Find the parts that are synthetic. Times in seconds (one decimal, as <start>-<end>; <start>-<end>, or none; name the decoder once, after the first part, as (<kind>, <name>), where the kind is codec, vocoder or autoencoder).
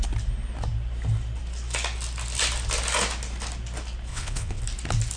4.1-4.6 (vocoder, WaveNeXt)